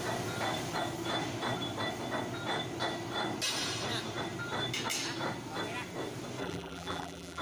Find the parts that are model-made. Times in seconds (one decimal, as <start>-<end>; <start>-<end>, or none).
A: 6.4-7.4

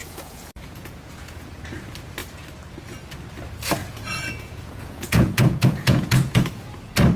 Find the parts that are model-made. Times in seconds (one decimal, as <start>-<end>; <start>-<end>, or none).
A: 0.0-1.6; 3.8-6.7

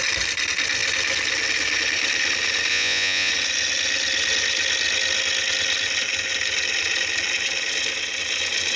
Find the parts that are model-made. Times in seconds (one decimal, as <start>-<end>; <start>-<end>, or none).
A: 2.7-3.3

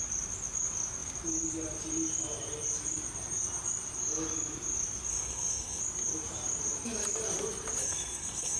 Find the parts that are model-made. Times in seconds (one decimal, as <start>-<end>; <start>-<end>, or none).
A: 5.1-5.8; 7.8-8.6